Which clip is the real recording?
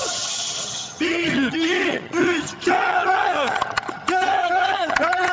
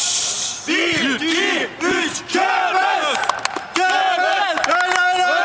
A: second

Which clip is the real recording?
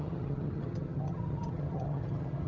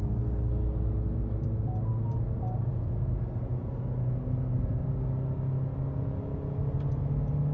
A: second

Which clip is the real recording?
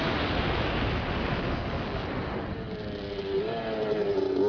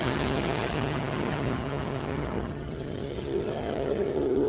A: first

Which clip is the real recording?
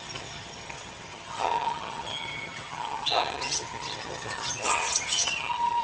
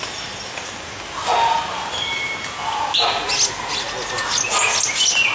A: second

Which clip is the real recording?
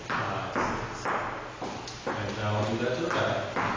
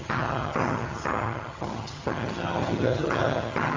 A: first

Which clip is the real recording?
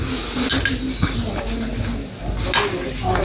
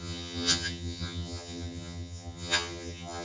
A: first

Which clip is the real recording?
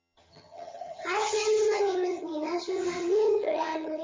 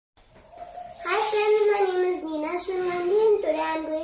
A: second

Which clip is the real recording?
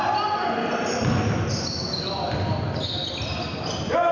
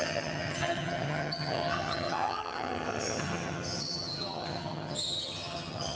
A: first